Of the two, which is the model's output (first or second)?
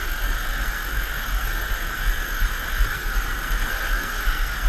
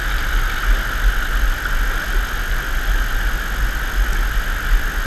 first